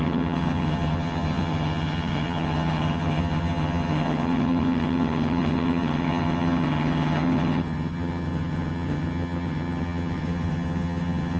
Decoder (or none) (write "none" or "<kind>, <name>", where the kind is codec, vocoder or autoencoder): vocoder, HiFi-GAN